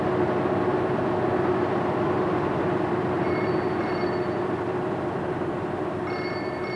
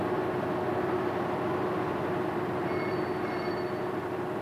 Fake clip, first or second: first